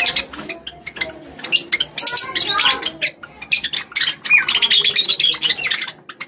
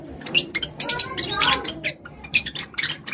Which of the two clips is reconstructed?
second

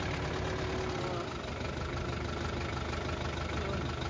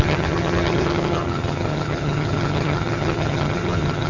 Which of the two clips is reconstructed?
second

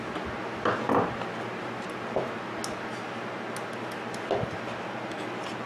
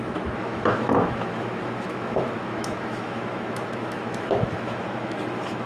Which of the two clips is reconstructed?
second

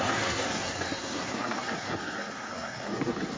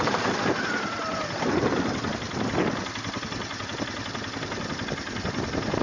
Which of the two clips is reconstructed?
first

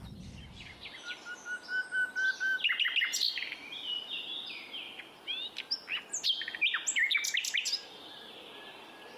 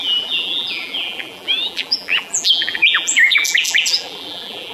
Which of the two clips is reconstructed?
second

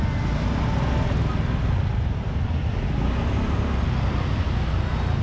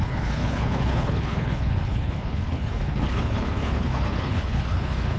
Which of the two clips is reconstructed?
second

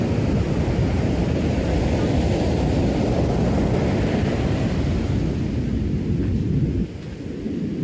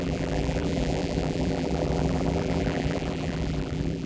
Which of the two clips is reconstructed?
second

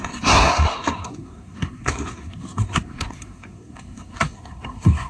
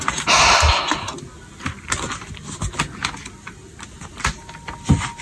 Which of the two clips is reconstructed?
first